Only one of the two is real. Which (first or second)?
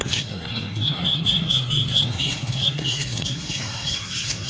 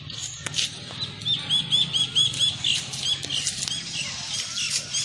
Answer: second